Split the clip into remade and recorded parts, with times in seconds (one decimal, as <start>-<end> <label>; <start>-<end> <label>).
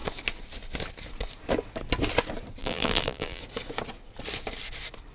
0.0-2.6 recorded; 2.6-3.4 remade; 3.4-5.1 recorded